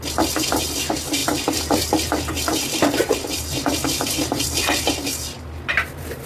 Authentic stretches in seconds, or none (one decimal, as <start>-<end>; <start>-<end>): 0.0-6.3

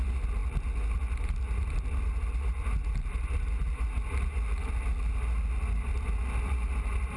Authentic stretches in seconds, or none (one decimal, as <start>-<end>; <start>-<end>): 0.0-7.2

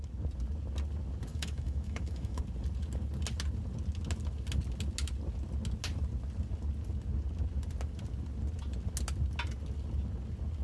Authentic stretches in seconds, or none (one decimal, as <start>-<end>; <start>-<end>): 0.0-1.3; 2.4-10.6

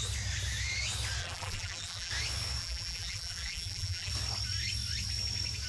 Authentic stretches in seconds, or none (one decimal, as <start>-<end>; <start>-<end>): 0.0-1.2; 2.1-2.6; 4.1-5.7

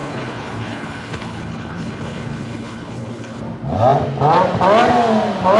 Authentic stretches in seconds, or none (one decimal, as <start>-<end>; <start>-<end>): 3.4-5.6